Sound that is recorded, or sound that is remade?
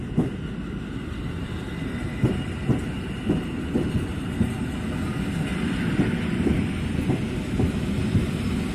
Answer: recorded